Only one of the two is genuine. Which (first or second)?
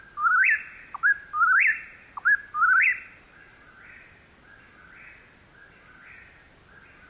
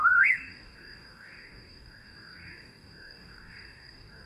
first